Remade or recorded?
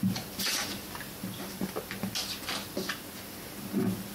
recorded